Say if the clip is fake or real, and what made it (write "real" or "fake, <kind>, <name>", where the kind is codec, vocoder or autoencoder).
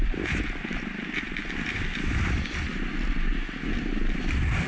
real